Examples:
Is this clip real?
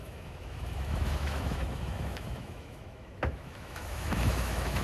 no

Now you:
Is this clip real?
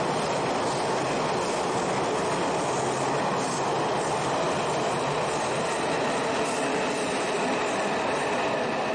yes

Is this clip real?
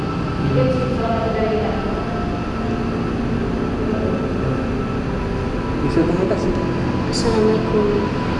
yes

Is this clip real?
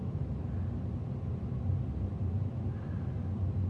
yes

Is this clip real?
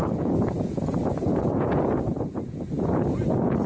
no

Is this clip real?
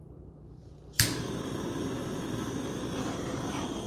no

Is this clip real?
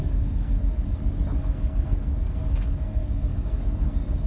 no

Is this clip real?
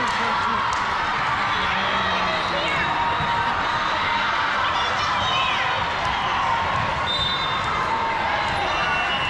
yes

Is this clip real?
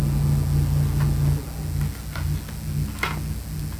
yes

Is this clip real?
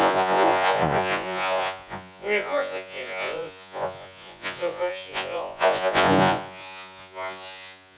no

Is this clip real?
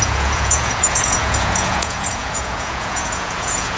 no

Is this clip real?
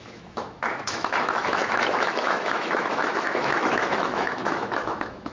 no